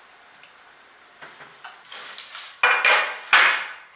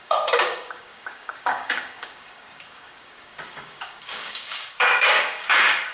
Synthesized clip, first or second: second